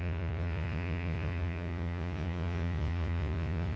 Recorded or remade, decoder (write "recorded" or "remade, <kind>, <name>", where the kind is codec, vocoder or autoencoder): remade, vocoder, Vocos